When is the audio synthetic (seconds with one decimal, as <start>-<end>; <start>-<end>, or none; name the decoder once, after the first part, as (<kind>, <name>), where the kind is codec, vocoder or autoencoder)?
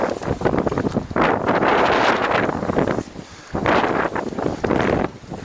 none